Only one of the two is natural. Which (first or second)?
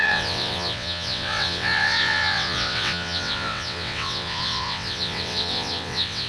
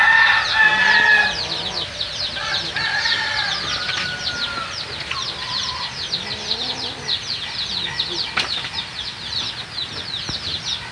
second